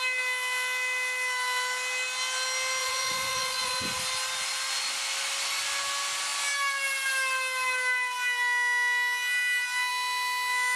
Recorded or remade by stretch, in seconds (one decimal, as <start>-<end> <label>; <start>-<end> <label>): 0.0-2.8 recorded; 2.8-4.0 remade; 4.0-10.8 recorded